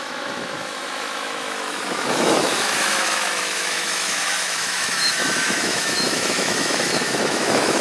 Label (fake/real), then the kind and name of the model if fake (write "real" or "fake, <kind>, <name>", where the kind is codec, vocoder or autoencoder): fake, autoencoder, DAC-VAE